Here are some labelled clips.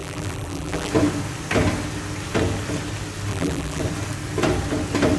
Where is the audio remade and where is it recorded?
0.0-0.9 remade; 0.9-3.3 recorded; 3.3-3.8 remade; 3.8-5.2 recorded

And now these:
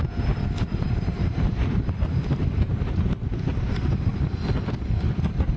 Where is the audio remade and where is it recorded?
0.0-0.7 recorded; 0.7-4.1 remade; 4.1-5.6 recorded

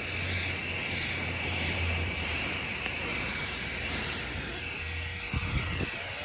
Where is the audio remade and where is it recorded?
0.0-0.8 recorded; 0.8-4.2 remade; 4.2-6.2 recorded